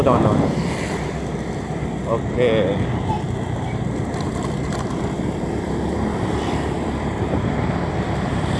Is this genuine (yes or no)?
no